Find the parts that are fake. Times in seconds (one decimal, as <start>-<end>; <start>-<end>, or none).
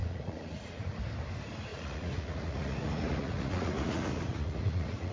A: 0.0-1.0; 1.7-5.1